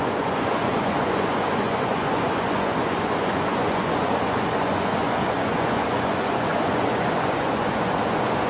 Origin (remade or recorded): remade